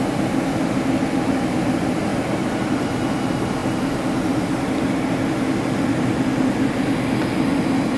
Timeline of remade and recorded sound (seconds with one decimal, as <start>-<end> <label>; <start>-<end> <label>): 0.0-8.0 recorded